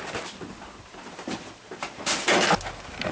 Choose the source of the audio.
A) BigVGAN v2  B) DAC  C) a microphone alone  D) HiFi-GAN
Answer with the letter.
C